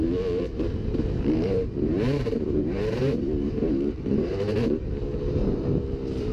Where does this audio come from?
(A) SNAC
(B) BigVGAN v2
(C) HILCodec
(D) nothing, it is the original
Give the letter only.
B